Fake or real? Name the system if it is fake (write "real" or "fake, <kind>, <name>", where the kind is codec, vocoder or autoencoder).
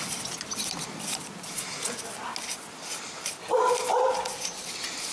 real